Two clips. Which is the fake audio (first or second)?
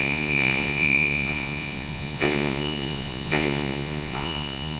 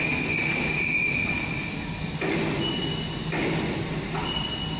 first